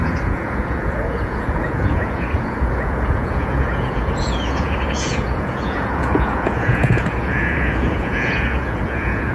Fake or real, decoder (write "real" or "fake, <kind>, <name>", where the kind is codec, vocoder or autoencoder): fake, vocoder, Vocos